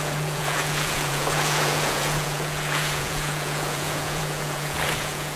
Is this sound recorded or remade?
remade